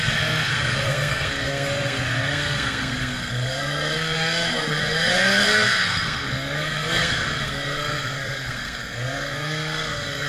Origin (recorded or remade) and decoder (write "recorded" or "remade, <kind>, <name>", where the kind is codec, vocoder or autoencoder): remade, codec, SNAC